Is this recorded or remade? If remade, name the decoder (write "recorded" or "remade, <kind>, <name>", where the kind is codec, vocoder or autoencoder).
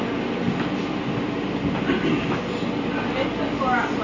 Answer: recorded